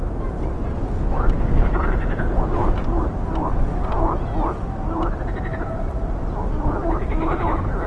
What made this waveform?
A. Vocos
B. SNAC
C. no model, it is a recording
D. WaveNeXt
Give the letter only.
C